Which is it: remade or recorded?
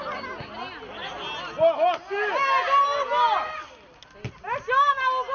recorded